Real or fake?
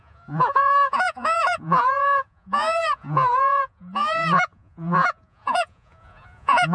fake